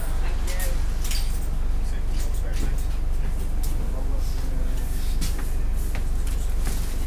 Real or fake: real